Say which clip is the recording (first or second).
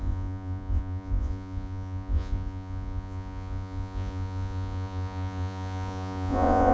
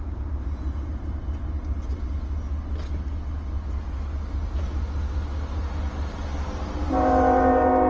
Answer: second